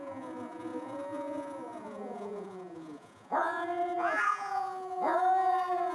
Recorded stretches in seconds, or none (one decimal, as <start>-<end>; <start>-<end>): none